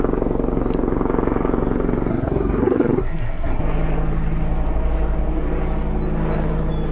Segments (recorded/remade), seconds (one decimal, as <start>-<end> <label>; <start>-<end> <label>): 0.0-2.1 recorded; 2.1-3.6 remade; 3.6-6.9 recorded